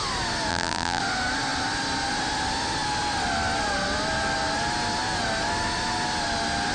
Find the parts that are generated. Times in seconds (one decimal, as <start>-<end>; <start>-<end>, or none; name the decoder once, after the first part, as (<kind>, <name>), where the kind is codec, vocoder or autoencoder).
0.5-1.0 (vocoder, BigVGAN v2)